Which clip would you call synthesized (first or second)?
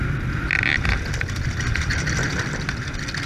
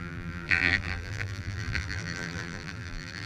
second